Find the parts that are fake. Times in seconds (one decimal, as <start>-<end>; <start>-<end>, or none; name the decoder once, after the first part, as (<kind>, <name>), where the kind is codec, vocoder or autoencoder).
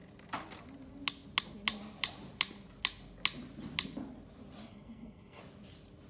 4.7-5.4 (codec, SNAC)